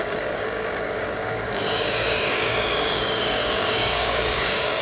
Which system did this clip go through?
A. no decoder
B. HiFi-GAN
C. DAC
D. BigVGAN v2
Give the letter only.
C